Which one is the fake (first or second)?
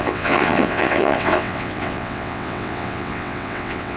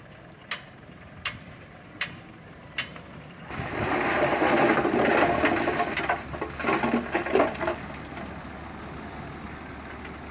first